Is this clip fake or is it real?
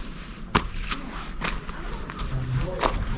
real